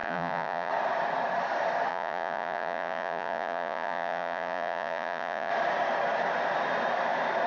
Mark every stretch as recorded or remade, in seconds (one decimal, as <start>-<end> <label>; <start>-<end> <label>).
0.0-0.7 remade; 0.7-1.9 recorded; 1.9-5.5 remade; 5.5-7.5 recorded